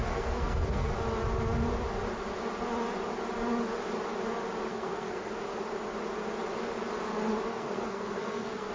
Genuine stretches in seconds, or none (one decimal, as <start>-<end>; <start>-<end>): 0.9-4.7; 5.3-7.5